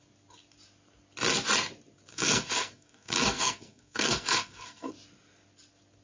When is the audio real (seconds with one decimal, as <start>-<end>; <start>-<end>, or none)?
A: 0.0-2.1; 4.9-6.0